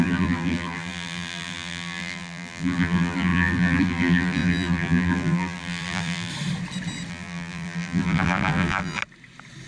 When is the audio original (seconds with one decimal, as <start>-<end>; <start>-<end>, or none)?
6.3-7.1; 9.0-9.7